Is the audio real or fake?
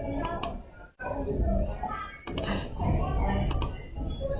real